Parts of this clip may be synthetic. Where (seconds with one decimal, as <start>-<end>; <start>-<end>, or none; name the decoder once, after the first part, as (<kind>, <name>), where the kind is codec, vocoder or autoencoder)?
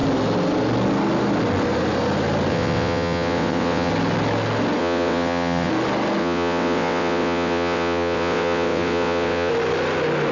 2.5-3.9 (vocoder, WaveNeXt); 4.8-5.7; 6.2-9.5